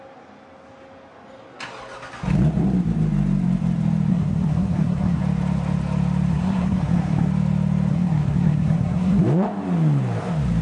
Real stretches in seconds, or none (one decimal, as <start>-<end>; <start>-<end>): 0.0-4.1; 5.2-6.3; 7.3-7.9; 9.2-10.6